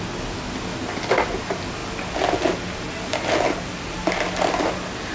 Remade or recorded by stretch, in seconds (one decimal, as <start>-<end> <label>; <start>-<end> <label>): 0.0-5.1 recorded